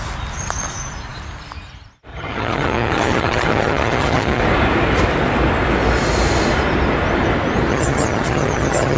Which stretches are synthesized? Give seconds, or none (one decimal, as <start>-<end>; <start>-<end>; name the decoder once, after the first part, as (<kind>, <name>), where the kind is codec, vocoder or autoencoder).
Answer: 2.1-4.4 (vocoder, HiFi-GAN); 7.7-9.0